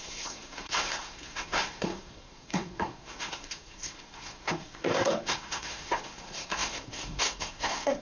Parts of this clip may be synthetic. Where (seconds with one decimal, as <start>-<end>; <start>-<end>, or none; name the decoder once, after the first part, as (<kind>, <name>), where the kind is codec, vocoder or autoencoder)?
0.0-8.0 (codec, SNAC)